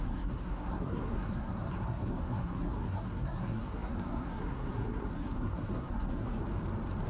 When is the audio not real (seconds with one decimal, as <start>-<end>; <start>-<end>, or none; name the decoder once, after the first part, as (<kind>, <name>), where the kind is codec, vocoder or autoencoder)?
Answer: 0.0-6.4 (codec, SNAC)